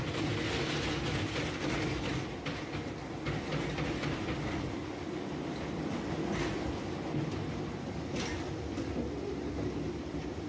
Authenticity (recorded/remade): recorded